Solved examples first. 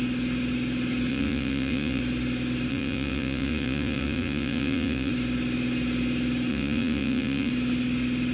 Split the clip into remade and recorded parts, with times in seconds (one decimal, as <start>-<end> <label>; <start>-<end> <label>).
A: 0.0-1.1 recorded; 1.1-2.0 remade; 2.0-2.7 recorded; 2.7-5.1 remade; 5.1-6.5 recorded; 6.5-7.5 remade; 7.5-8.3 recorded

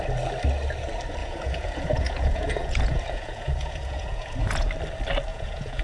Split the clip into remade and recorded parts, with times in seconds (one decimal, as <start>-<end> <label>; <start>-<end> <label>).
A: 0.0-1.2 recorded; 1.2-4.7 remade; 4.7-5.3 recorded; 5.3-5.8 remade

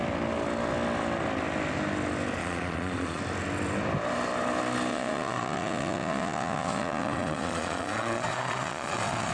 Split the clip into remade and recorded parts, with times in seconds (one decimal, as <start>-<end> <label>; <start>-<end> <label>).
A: 0.0-2.4 recorded; 2.4-3.2 remade; 3.2-4.9 recorded; 4.9-9.3 remade

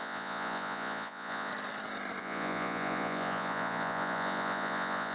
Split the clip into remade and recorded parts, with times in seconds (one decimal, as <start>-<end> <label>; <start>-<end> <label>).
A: 0.0-1.5 remade; 1.5-2.2 recorded; 2.2-5.1 remade